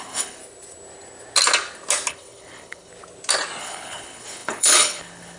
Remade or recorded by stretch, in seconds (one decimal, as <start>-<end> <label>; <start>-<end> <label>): 0.0-0.4 remade; 0.4-2.1 recorded; 2.1-2.9 remade; 2.9-3.6 recorded; 3.6-5.4 remade